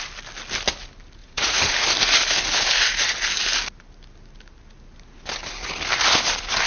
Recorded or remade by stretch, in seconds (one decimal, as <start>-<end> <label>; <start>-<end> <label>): 0.0-1.2 recorded; 1.2-1.7 remade; 1.7-6.7 recorded